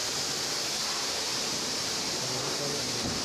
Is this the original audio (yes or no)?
no